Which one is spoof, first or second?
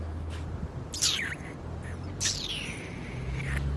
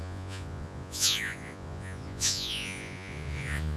second